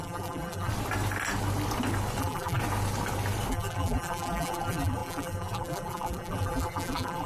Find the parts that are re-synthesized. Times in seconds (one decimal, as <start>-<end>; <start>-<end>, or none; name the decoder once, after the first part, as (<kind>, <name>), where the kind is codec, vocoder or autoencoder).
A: 0.0-0.7 (vocoder, BigVGAN v2); 2.2-2.6; 3.5-7.3